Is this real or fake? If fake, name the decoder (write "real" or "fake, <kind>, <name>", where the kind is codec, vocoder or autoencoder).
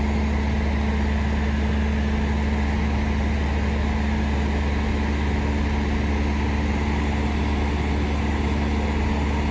real